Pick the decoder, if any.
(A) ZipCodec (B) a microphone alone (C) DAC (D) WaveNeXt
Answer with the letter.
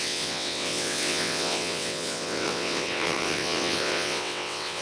D